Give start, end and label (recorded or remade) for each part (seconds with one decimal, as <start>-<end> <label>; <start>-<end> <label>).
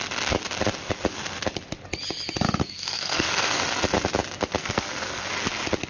0.0-2.6 recorded; 2.6-3.6 remade; 3.6-4.6 recorded; 4.6-5.3 remade; 5.3-5.9 recorded